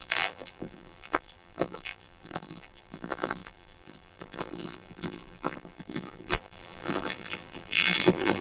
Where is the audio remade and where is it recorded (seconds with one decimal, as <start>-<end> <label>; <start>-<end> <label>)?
0.0-8.4 remade